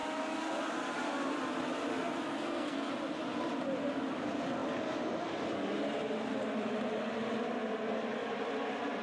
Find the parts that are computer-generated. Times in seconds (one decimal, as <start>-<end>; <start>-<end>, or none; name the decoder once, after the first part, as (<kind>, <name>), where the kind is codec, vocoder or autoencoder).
2.3-2.9 (codec, SNAC)